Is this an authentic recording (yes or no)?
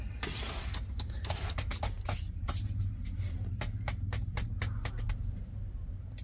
yes